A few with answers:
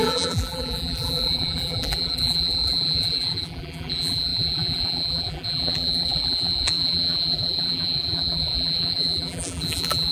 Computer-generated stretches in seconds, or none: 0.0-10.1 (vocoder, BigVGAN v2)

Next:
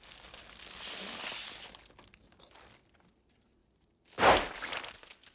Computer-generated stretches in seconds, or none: none

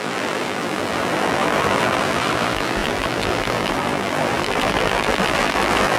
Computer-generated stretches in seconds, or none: 0.0-6.0 (vocoder, BigVGAN v2)

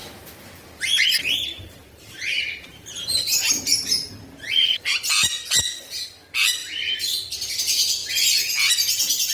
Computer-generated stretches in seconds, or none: 0.0-4.1 (vocoder, BigVGAN v2); 6.6-7.5

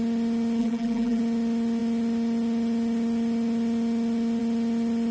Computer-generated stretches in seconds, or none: 0.6-1.2 (vocoder, BigVGAN v2)

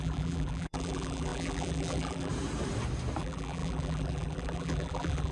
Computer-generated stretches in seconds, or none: 0.0-2.3 (vocoder, BigVGAN v2); 3.2-5.3